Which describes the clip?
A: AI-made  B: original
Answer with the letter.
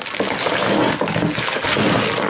B